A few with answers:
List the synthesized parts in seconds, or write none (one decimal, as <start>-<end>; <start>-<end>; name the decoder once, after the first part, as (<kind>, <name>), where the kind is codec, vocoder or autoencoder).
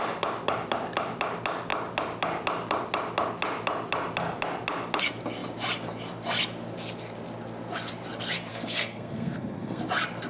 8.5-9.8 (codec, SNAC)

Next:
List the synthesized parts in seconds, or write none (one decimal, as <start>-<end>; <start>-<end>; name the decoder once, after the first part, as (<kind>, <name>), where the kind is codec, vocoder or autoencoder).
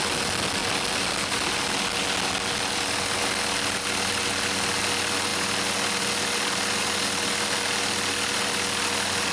none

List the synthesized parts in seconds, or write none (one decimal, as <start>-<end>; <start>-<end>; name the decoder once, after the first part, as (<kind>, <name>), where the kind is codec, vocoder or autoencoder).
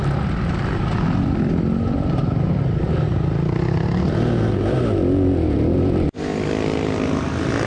none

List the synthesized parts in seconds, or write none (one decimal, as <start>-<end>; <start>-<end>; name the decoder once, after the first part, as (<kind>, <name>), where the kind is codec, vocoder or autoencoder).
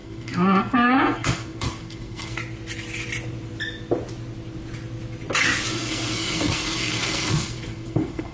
0.0-2.4 (codec, SNAC); 5.7-8.3